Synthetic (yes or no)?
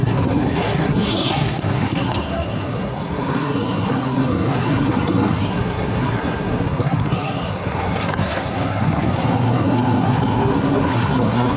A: yes